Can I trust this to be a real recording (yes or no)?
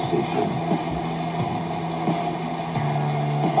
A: yes